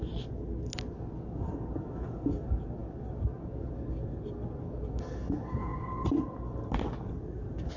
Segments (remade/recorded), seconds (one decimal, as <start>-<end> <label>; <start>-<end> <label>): 0.0-7.8 recorded